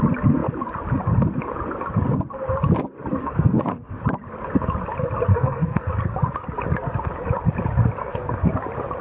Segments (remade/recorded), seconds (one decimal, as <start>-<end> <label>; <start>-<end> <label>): 0.0-3.2 recorded; 3.2-4.0 remade; 4.0-5.3 recorded; 5.3-5.9 remade; 5.9-8.0 recorded; 8.0-8.5 remade; 8.5-9.0 recorded